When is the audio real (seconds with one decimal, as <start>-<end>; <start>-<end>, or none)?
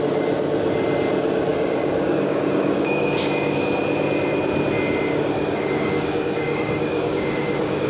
0.0-1.5; 3.6-5.1